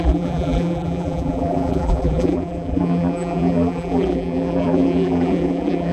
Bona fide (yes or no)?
no